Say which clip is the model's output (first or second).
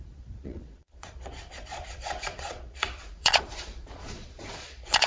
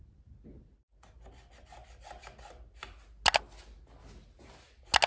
first